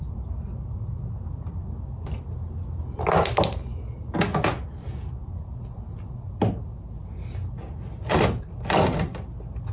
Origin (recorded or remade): recorded